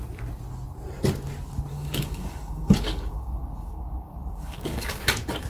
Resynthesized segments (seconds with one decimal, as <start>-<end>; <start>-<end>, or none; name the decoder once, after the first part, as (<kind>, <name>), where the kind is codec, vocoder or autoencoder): 1.7-5.0 (codec, DAC)